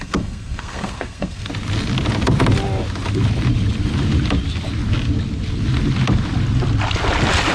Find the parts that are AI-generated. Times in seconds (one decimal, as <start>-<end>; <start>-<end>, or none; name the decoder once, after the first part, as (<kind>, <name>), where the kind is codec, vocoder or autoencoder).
0.0-1.5 (codec, SNAC)